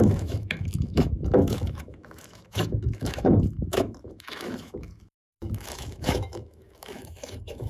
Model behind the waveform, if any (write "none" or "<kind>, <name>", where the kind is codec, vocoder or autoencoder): autoencoder, DAC-VAE